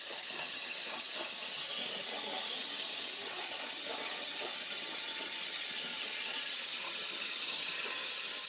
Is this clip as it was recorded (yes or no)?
no